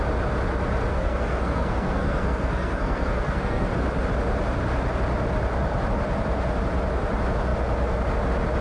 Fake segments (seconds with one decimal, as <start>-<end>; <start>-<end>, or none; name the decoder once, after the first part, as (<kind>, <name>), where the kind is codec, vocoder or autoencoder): 0.9-3.7 (codec, SNAC)